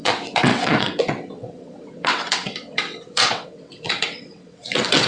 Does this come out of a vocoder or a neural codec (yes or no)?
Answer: yes